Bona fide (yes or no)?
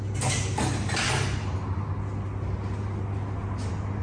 yes